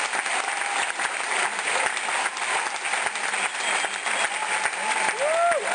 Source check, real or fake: real